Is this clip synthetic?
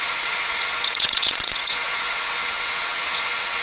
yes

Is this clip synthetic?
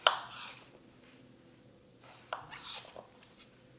no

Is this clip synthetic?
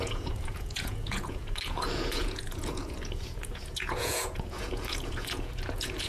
yes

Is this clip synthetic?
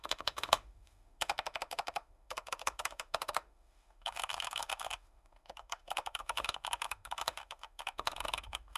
yes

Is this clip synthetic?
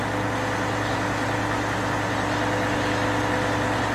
no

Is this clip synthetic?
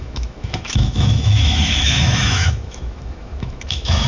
yes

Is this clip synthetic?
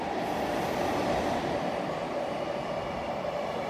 no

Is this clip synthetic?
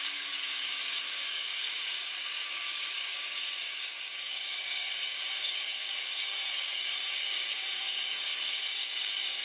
yes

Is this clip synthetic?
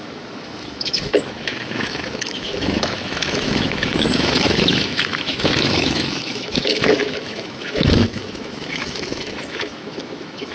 yes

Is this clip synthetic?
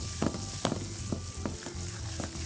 no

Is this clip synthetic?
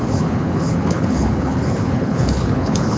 yes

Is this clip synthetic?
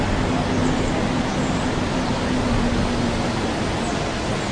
no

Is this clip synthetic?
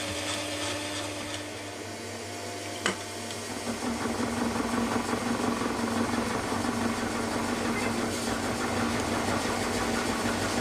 no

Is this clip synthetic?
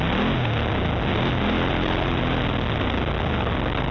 no